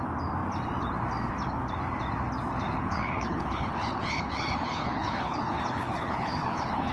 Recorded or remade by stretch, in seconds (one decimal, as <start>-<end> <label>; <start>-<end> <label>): 0.0-2.8 recorded; 2.8-6.9 remade